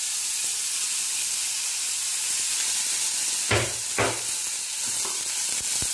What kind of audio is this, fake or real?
real